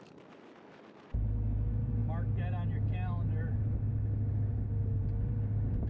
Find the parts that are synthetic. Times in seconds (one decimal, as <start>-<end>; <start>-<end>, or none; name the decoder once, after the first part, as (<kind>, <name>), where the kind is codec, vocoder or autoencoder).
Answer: none